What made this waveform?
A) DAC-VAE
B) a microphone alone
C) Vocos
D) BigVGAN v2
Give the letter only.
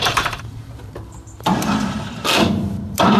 D